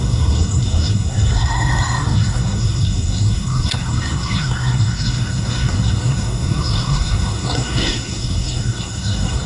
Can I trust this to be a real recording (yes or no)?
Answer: no